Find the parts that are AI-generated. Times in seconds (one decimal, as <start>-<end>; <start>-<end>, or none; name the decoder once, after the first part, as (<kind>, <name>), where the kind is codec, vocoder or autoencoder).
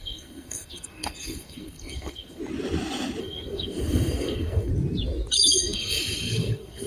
0.0-2.4 (codec, SNAC); 3.2-4.7; 5.3-6.9